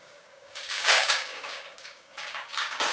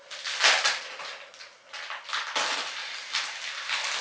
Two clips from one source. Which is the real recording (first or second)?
second